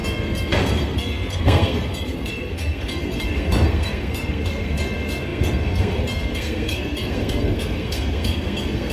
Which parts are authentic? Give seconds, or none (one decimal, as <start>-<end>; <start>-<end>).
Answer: none